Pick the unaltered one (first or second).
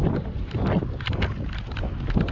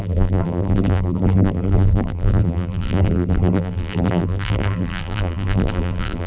first